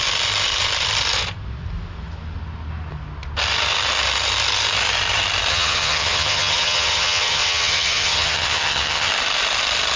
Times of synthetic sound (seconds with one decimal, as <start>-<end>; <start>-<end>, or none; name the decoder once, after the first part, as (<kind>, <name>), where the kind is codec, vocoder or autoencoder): 5.5-9.1 (vocoder, HiFi-GAN)